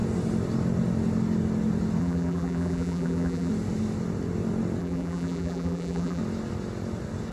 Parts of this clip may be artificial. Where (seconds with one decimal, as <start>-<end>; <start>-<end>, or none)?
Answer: 2.0-3.5; 4.8-6.2